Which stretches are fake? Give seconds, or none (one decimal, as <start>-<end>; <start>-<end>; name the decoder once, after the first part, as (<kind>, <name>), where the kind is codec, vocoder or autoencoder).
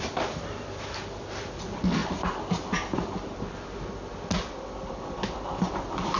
none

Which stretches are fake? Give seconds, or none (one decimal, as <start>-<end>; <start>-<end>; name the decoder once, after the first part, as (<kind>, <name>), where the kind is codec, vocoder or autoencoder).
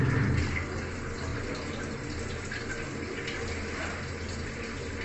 none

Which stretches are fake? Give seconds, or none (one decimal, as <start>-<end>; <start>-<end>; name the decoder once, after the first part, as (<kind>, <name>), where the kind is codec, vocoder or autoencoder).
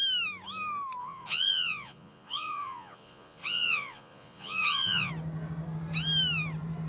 1.0-5.1 (vocoder, Vocos)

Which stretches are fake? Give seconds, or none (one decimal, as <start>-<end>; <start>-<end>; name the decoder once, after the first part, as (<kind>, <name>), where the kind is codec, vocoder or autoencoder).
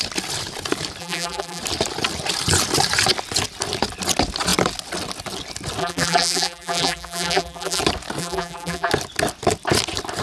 1.0-1.6 (vocoder, BigVGAN v2); 5.8-7.8; 8.2-8.9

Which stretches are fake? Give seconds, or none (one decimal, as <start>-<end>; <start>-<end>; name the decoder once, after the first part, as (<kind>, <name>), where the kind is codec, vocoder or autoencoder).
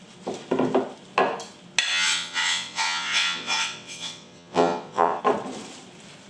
1.9-5.2 (vocoder, WaveNeXt)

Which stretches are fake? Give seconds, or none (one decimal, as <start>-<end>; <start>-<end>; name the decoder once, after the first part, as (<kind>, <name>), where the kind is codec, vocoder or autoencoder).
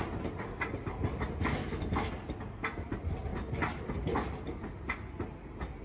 1.6-2.1 (autoencoder, DAC-VAE)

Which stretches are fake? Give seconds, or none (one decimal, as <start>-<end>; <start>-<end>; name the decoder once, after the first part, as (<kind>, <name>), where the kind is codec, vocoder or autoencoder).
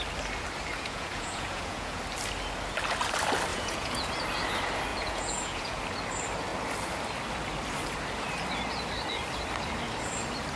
0.7-2.0 (vocoder, Vocos); 3.5-4.1; 4.9-5.8